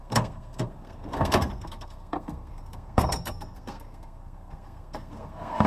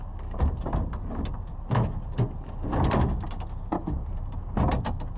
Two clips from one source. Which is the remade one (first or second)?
first